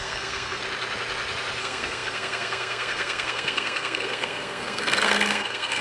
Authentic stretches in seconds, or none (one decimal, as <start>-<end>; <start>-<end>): 0.6-1.6